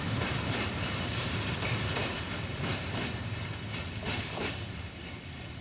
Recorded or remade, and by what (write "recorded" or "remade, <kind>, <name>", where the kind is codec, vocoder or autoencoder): remade, vocoder, BigVGAN v2